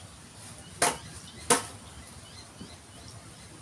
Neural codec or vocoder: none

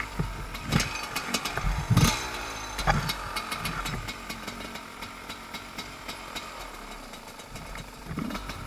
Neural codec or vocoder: none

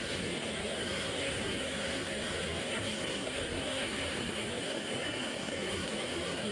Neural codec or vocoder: codec, SNAC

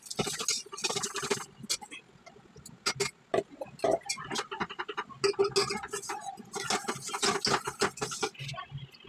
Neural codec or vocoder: none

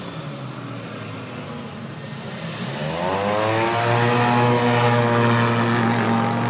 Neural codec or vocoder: none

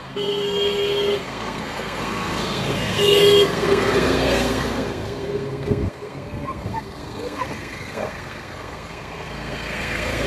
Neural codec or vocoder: codec, SNAC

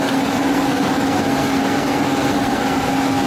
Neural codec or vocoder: codec, SNAC